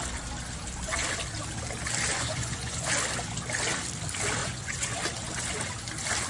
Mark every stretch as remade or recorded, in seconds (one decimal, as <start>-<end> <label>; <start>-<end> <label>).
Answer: 0.0-2.1 recorded; 2.1-2.9 remade; 2.9-4.4 recorded; 4.4-4.9 remade; 4.9-6.3 recorded